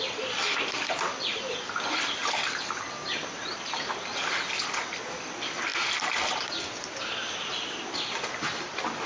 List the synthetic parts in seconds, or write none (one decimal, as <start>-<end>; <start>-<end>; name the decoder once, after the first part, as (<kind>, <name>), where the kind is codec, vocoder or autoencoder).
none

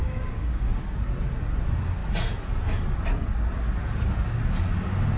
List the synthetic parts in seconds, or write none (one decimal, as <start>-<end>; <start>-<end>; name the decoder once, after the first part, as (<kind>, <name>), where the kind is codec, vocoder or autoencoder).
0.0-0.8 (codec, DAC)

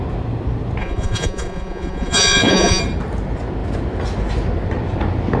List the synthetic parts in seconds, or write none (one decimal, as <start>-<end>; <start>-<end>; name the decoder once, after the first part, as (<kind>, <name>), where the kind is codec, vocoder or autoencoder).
0.8-2.8 (vocoder, Vocos)